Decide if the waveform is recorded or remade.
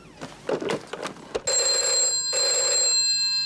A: recorded